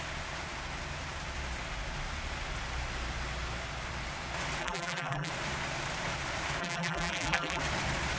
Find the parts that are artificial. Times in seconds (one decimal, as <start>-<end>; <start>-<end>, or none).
4.6-5.3; 6.6-7.6